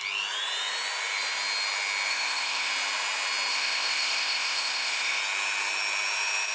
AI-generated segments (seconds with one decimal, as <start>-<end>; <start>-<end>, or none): 2.1-2.7; 3.5-5.2